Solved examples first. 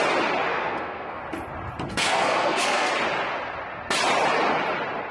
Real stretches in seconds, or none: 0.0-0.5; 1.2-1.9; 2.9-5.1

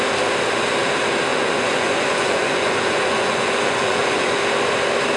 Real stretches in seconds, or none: 0.0-1.3; 4.4-5.2

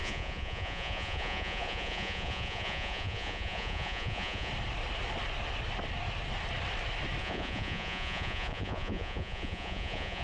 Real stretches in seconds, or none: 4.5-7.2